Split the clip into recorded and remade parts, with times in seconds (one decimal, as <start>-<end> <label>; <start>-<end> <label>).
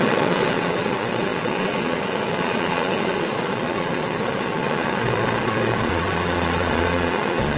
0.0-7.6 remade